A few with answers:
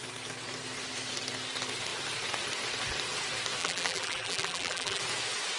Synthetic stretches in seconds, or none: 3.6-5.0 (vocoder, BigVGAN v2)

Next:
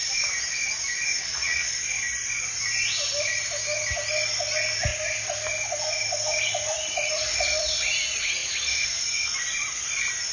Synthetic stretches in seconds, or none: 1.2-1.7 (vocoder, Vocos)

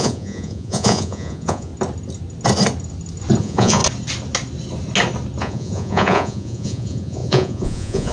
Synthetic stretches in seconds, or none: 0.0-1.7 (vocoder, Vocos); 3.4-3.8; 5.4-8.1

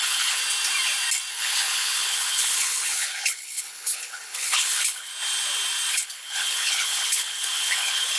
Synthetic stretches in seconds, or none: 0.0-0.4 (codec, HILCodec); 1.3-5.1; 5.9-8.2

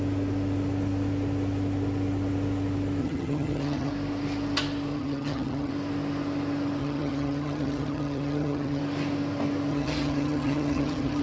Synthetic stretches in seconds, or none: 3.0-3.9 (vocoder, HiFi-GAN); 4.9-5.7; 6.8-8.8; 9.7-11.2